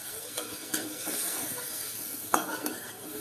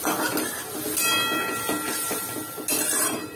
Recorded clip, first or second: second